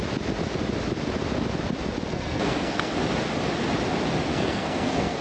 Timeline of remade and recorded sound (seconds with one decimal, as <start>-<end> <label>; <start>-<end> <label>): 0.0-2.1 recorded; 2.1-2.9 remade; 2.9-4.3 recorded; 4.3-5.2 remade